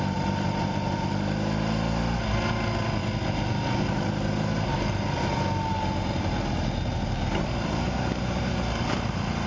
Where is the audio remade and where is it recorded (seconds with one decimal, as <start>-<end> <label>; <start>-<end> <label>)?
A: 0.0-9.5 recorded